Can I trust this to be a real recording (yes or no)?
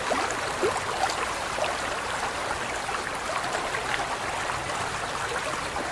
yes